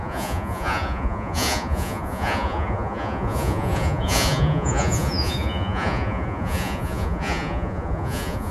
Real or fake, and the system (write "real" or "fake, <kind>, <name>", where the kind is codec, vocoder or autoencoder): fake, vocoder, Vocos